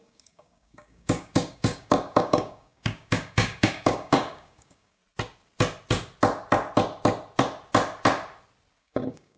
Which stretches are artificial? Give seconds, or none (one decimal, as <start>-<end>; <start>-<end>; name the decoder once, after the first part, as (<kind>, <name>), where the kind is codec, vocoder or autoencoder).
0.0-5.0 (codec, DAC); 8.8-9.4